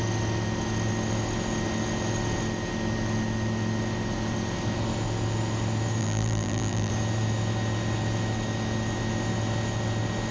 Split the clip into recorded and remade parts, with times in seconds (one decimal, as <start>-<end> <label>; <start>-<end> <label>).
0.0-6.0 recorded; 6.0-6.9 remade; 6.9-10.3 recorded